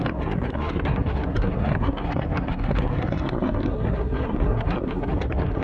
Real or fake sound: fake